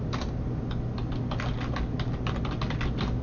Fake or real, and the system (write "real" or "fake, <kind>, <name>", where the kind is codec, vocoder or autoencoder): real